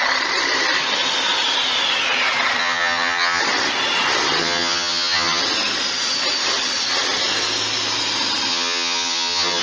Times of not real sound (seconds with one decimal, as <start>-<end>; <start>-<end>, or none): 2.6-3.4; 4.4-5.4; 8.5-9.6